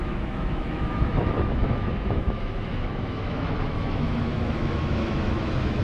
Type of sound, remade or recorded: remade